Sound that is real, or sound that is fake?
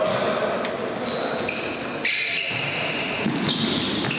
real